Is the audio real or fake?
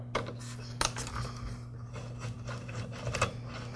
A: real